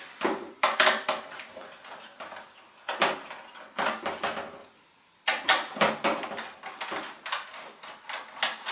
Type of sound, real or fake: real